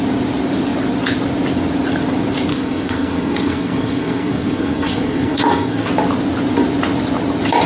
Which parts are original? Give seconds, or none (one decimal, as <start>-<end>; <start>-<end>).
0.0-2.5; 5.9-7.7